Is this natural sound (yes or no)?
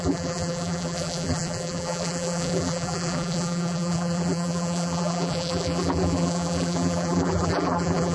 no